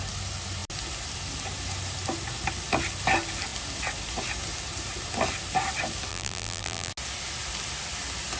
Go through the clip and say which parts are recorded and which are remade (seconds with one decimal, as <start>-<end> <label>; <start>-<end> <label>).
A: 0.0-6.1 recorded; 6.1-6.9 remade; 6.9-8.4 recorded